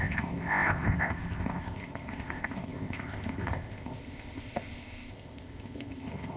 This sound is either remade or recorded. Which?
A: remade